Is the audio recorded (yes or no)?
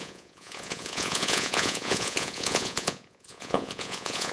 no